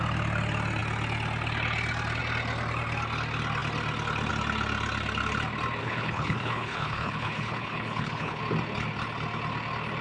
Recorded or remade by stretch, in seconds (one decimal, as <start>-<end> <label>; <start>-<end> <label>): 0.0-5.8 recorded; 5.8-8.4 remade; 8.4-10.0 recorded